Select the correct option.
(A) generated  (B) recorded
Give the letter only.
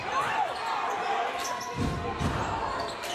B